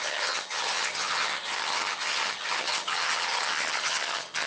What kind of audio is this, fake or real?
fake